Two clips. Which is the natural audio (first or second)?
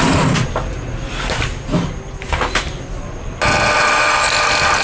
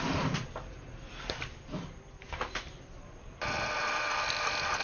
first